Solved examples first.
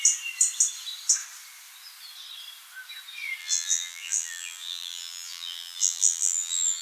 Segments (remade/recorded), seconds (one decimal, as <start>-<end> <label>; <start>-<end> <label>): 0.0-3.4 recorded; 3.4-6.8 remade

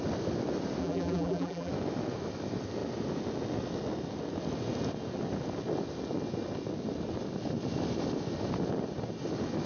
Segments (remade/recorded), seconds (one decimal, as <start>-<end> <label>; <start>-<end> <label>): 0.0-0.8 recorded; 0.8-1.7 remade; 1.7-9.7 recorded

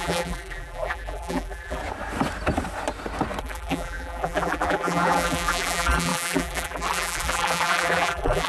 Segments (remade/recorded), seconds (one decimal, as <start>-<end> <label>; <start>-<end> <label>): 0.0-1.8 remade; 1.8-3.4 recorded; 3.4-8.5 remade